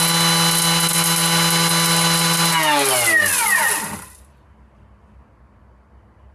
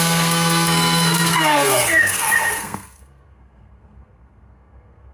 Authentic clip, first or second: first